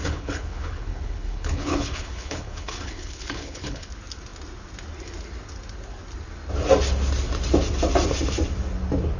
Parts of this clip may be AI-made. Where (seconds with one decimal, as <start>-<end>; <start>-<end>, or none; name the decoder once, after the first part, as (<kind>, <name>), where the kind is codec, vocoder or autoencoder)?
0.0-3.9 (codec, HILCodec)

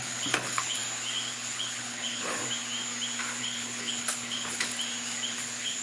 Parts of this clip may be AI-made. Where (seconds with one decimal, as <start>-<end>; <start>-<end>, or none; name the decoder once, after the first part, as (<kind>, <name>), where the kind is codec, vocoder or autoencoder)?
0.0-0.8 (codec, HILCodec); 1.3-2.4; 3.4-4.7; 5.3-5.8

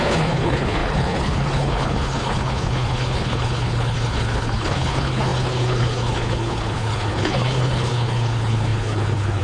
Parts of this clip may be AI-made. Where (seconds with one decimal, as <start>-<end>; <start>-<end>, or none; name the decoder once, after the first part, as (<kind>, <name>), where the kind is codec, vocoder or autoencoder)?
0.0-9.4 (codec, HILCodec)

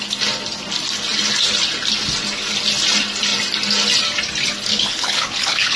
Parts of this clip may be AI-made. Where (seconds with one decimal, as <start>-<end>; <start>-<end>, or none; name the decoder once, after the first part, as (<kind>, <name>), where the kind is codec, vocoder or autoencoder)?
4.7-5.8 (codec, HILCodec)

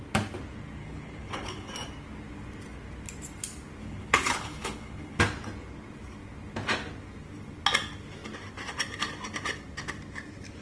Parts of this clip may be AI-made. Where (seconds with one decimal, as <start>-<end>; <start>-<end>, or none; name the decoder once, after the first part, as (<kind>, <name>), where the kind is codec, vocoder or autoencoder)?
0.8-1.7 (codec, HILCodec); 3.8-5.2

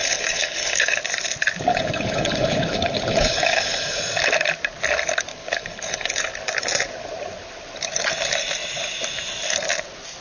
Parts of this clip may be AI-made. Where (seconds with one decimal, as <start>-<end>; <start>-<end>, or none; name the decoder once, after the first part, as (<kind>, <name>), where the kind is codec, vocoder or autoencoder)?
0.0-1.0 (codec, HILCodec); 1.7-4.0; 5.3-6.2

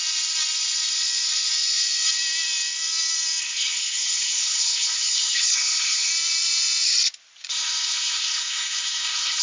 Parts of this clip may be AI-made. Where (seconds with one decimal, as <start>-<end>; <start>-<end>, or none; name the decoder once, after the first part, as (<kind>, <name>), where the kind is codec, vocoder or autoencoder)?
3.4-6.1 (codec, HILCodec); 7.5-9.4